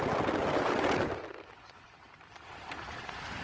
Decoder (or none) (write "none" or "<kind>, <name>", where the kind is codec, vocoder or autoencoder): vocoder, BigVGAN v2